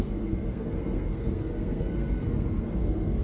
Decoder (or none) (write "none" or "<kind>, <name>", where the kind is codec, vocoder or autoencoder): codec, SNAC